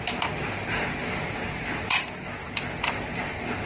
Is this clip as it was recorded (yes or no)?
yes